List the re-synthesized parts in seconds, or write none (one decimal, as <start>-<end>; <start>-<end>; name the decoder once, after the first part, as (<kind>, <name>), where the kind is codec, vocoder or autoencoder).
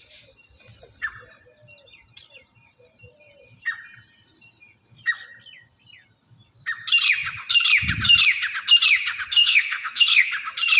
9.4-10.3 (codec, SNAC)